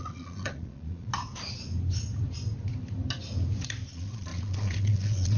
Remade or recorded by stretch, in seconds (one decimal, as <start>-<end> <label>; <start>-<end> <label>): 0.0-1.1 remade; 1.1-3.9 recorded; 3.9-5.4 remade